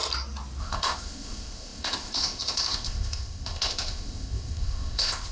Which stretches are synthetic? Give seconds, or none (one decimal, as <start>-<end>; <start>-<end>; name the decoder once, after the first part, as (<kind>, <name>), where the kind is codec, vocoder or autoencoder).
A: 0.6-5.3 (codec, ZipCodec)